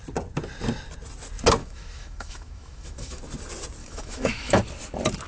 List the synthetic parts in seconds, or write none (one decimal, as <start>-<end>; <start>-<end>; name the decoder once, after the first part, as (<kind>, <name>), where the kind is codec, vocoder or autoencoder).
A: 1.6-3.2 (autoencoder, DAC-VAE); 3.8-4.6